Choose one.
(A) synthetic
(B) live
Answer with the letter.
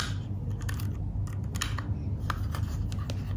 B